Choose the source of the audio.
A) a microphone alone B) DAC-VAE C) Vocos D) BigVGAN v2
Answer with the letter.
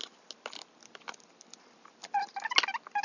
A